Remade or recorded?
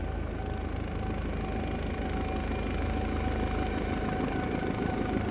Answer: recorded